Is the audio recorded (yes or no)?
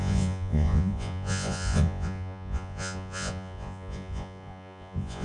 no